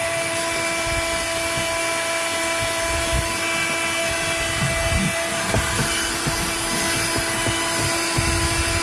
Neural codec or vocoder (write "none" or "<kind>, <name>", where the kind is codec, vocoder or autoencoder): none